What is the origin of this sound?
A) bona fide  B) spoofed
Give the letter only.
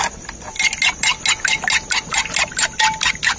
A